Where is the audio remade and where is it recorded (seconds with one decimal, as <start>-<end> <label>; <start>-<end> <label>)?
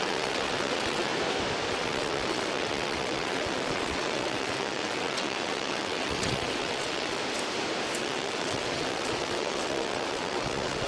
0.0-1.1 remade; 1.1-1.7 recorded; 1.7-7.2 remade; 7.2-8.0 recorded; 8.0-10.9 remade